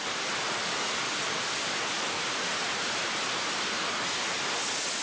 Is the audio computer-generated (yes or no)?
no